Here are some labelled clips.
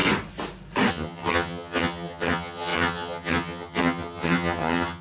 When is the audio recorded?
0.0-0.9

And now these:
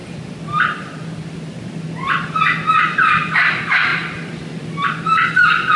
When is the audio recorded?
1.6-3.9

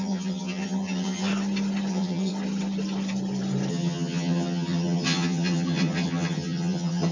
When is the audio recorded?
1.3-1.9; 2.3-3.7

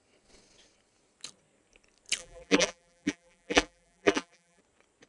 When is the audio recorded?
0.0-2.2; 4.6-5.1